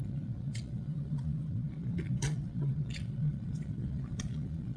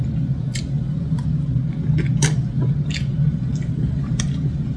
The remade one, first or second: first